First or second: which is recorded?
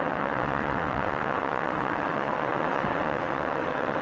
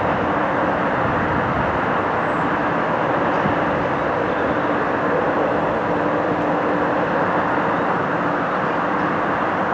second